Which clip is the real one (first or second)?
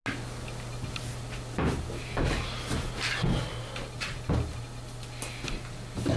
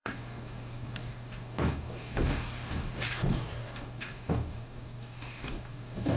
first